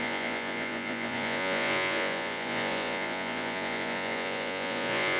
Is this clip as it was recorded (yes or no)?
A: no